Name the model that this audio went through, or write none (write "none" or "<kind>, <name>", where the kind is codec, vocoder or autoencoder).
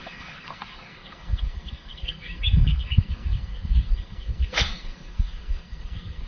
codec, SNAC